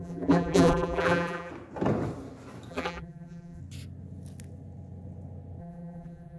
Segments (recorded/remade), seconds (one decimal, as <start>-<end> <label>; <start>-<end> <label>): 0.0-1.5 remade; 1.5-2.7 recorded; 2.7-3.6 remade; 3.6-5.6 recorded; 5.6-6.4 remade